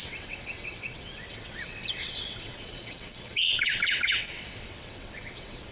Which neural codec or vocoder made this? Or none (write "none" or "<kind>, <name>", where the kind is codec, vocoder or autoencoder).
vocoder, WaveNeXt